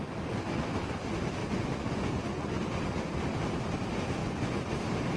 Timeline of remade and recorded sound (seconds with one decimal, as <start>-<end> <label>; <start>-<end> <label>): 0.0-1.4 recorded; 1.4-2.6 remade; 2.6-4.2 recorded; 4.2-4.8 remade; 4.8-5.2 recorded